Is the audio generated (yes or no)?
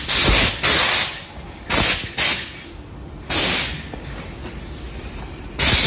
no